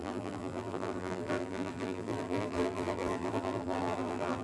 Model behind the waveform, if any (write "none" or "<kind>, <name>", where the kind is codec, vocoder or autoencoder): vocoder, BigVGAN v2